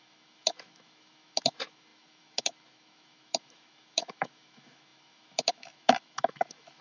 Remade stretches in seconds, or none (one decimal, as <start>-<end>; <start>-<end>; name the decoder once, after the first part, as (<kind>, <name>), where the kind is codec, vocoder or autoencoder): 0.0-6.8 (autoencoder, DAC-VAE)